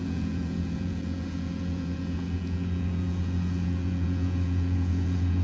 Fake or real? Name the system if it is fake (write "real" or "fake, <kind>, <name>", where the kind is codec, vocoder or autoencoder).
fake, vocoder, Vocos